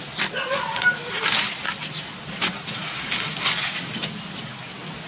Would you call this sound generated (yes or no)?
no